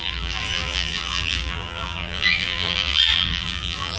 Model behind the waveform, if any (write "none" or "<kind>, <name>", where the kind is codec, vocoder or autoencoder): vocoder, BigVGAN v2